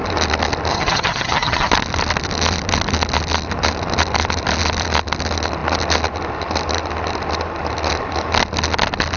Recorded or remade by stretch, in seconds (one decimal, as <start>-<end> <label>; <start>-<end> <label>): 0.0-0.7 recorded; 0.7-1.7 remade; 1.7-9.2 recorded